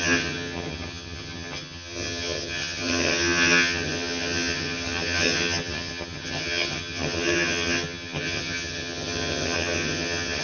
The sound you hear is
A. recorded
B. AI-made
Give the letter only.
B